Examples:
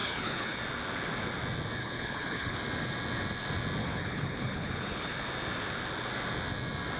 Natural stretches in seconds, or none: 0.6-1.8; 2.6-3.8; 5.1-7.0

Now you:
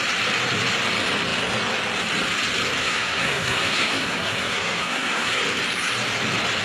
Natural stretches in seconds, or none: 0.0-2.8; 5.4-6.6

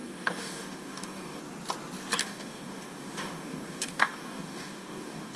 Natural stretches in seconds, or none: 1.4-2.2

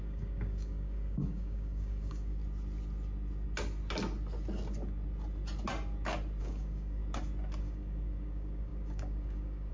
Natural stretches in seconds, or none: 2.4-6.4; 7.0-7.6

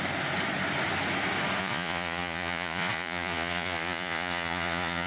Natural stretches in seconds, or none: 0.0-1.6

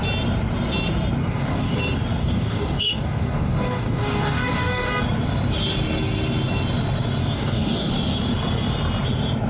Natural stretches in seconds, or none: 0.0-1.2; 1.8-2.2; 4.9-7.2; 7.9-9.5

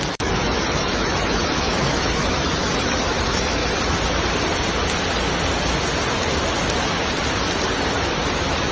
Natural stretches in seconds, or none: 3.6-8.1

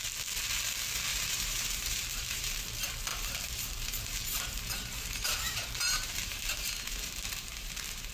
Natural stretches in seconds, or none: 0.0-1.1; 2.6-3.1